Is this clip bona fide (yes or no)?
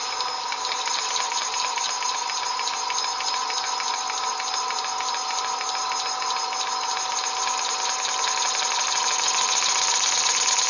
yes